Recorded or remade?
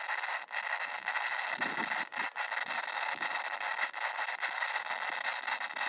recorded